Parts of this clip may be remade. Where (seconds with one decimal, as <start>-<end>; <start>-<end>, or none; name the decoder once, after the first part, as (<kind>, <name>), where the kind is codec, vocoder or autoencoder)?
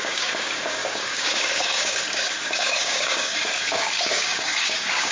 0.0-5.1 (codec, DAC)